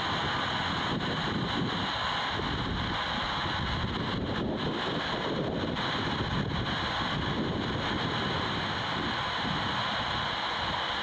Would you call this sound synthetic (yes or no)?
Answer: no